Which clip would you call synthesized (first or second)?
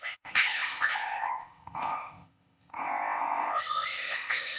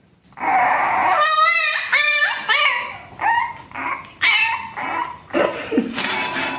first